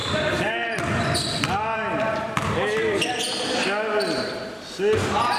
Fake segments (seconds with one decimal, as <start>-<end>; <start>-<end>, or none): 0.0-3.2